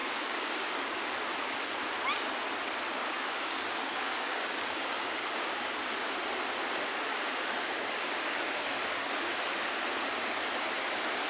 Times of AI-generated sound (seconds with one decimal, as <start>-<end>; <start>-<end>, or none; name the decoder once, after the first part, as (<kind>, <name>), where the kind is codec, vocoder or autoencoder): 0.0-1.3 (codec, DAC); 3.0-5.7; 7.1-9.4